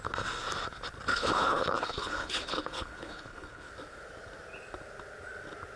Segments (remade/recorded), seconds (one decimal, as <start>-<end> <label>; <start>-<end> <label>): 0.0-1.1 recorded; 1.1-3.7 remade; 3.7-5.8 recorded